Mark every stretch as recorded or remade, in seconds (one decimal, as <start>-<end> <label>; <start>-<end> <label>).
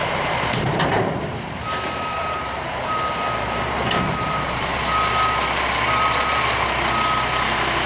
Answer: 0.0-4.7 remade; 4.7-7.9 recorded